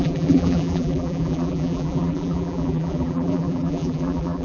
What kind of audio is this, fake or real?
fake